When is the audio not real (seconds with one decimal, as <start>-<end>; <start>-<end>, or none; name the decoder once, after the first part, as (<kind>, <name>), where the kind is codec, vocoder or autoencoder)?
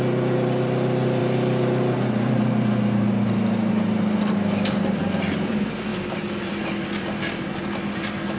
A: none